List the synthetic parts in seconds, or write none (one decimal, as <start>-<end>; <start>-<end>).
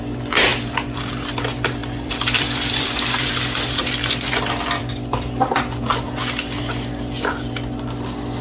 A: 1.8-3.4